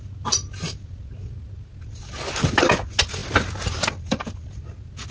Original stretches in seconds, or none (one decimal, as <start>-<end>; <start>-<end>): 0.0-5.1